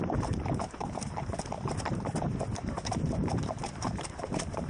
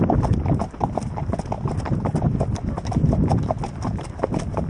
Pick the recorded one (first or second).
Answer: second